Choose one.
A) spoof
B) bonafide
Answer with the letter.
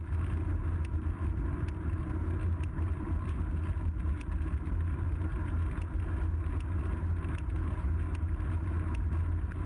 B